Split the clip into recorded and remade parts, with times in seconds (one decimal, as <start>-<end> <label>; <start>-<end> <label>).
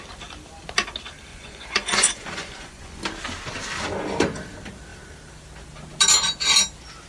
0.0-1.3 recorded; 1.3-3.0 remade; 3.0-7.1 recorded